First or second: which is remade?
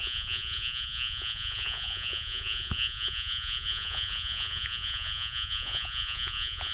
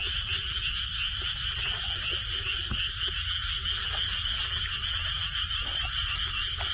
first